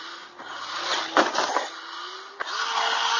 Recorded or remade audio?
recorded